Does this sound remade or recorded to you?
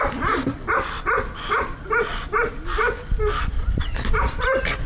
recorded